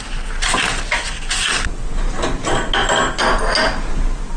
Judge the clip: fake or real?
real